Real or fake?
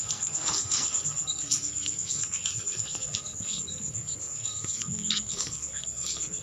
fake